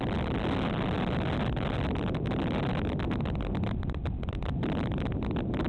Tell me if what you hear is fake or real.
real